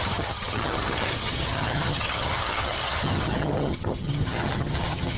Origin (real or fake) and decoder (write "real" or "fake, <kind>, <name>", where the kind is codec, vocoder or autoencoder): fake, vocoder, HiFi-GAN